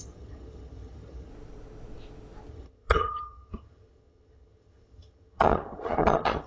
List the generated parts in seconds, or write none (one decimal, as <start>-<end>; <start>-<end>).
0.0-1.3; 2.5-6.5